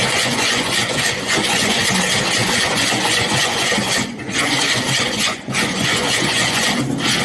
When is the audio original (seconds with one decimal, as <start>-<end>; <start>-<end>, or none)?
1.9-2.4; 6.7-7.2